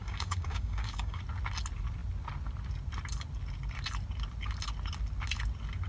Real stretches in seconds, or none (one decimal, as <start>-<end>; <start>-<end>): 1.2-5.9